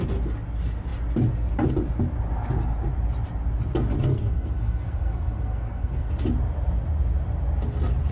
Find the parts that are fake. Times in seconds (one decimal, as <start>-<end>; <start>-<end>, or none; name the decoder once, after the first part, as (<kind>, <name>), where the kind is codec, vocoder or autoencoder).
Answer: 4.1-6.1 (codec, SNAC)

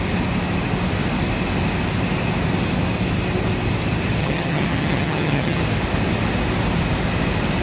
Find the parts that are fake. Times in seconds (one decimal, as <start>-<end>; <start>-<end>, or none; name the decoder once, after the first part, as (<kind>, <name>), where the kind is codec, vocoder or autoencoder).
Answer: 4.2-5.6 (vocoder, HiFi-GAN)

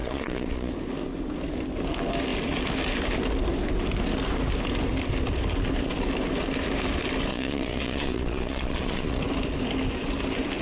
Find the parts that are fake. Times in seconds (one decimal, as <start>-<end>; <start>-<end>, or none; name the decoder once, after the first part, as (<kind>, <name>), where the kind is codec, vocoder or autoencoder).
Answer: 0.0-0.7 (vocoder, Vocos); 7.3-9.2

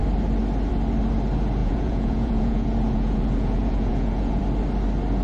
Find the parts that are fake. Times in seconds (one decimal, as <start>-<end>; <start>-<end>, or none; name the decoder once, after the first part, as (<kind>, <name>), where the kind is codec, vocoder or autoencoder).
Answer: 1.6-4.4 (vocoder, Vocos)

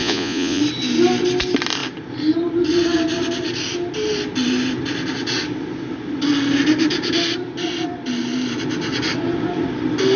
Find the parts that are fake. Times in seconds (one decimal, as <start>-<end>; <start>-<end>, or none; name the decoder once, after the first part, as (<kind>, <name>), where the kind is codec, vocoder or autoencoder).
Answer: 0.0-0.6 (vocoder, Vocos)

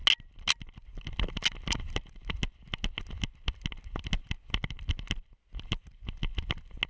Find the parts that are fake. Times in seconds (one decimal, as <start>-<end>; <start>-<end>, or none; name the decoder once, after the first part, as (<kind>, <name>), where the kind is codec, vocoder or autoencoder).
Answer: none

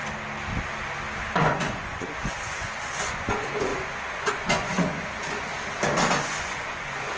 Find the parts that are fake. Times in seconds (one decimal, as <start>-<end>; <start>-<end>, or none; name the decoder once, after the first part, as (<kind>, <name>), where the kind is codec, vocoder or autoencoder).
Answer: 1.4-5.5 (vocoder, Vocos); 6.2-7.2

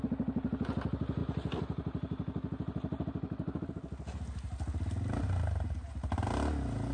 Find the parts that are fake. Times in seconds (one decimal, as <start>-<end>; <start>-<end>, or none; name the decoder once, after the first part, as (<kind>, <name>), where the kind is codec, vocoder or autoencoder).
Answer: none